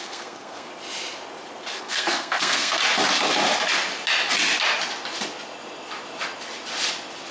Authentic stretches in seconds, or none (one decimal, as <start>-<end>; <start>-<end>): 0.7-1.8; 2.8-7.3